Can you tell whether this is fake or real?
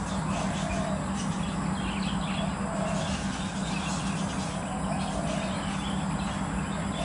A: real